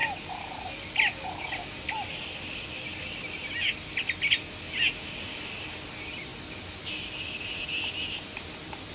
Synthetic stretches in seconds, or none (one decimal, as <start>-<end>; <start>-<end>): none